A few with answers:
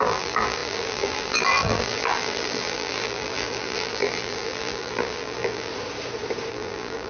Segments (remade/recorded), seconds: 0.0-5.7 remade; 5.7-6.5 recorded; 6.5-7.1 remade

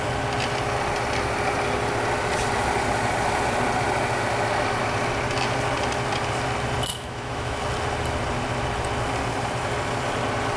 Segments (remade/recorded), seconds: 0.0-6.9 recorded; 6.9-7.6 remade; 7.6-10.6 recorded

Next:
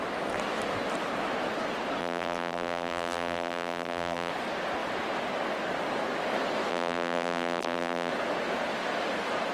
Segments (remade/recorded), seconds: 0.0-2.0 recorded; 2.0-4.3 remade; 4.3-6.7 recorded; 6.7-8.1 remade; 8.1-9.5 recorded

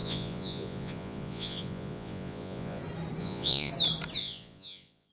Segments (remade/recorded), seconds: 0.0-2.8 remade; 2.8-3.2 recorded; 3.2-3.7 remade; 3.7-4.2 recorded; 4.2-5.1 remade

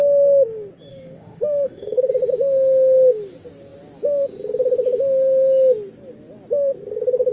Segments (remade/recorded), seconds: 0.0-0.9 recorded; 0.9-2.1 remade; 2.1-7.3 recorded

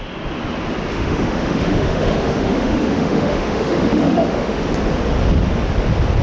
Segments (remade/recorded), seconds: 0.0-0.9 recorded; 0.9-4.6 remade; 4.6-6.2 recorded

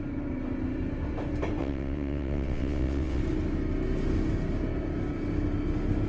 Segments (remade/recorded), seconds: 0.0-1.6 recorded; 1.6-3.2 remade; 3.2-6.1 recorded